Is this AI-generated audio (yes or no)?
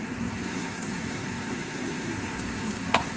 yes